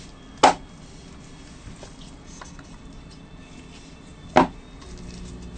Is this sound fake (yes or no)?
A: no